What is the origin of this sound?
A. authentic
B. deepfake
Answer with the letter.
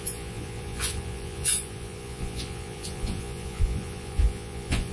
B